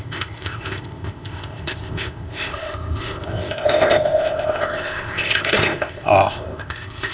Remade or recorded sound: remade